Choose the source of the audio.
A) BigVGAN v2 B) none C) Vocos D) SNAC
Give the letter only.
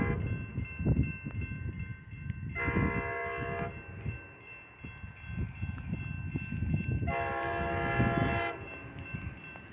B